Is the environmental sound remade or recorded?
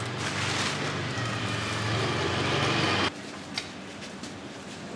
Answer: recorded